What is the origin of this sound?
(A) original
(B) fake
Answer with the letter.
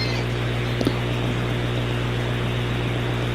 B